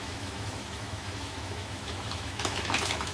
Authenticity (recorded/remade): remade